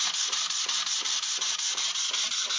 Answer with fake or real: real